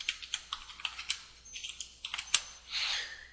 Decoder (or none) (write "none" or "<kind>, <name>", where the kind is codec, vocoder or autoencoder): none